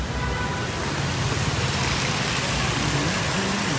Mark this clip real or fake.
real